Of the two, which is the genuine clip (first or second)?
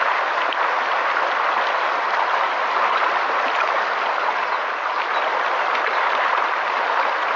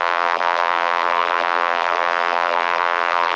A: first